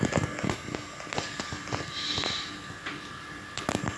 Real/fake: real